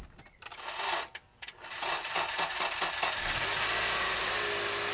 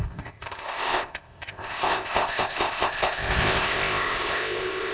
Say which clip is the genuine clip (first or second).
first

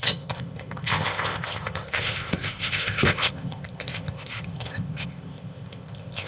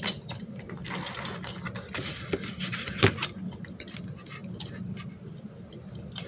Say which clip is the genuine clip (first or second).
second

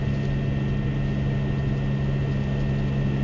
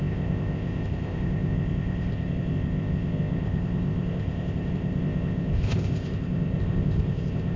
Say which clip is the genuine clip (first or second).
first